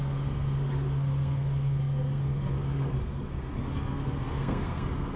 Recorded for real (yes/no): no